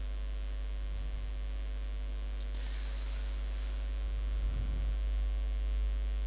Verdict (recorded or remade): recorded